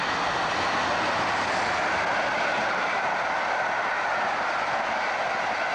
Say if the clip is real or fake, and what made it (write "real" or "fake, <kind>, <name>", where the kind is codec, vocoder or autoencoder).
real